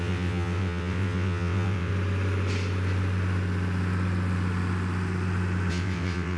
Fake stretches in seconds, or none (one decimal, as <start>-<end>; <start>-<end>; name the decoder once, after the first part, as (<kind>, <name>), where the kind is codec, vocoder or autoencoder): 0.0-1.9 (vocoder, WaveNeXt); 5.7-6.4